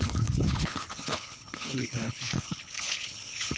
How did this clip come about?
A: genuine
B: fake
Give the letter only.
B